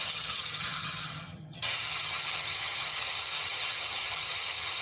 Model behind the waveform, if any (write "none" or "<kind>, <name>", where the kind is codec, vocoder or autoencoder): vocoder, HiFi-GAN